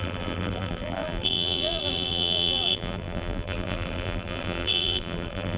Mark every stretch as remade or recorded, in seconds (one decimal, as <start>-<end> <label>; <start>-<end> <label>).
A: 0.0-5.6 remade